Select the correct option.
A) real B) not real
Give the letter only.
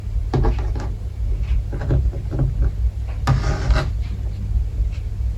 A